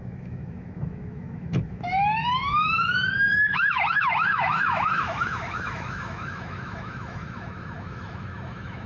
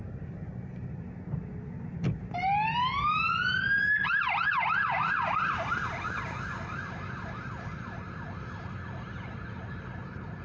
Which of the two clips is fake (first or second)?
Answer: first